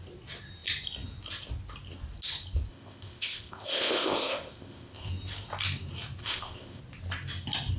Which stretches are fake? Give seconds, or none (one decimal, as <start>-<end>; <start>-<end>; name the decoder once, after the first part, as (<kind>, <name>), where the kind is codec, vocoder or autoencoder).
2.7-5.1 (codec, ZipCodec); 6.2-6.8